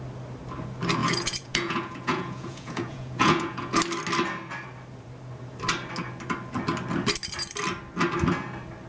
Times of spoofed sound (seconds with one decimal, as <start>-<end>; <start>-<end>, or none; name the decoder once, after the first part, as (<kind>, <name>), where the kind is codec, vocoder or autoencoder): 1.0-3.8 (vocoder, Vocos)